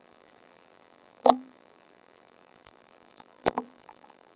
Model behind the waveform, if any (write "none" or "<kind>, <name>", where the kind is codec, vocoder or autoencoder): vocoder, BigVGAN v2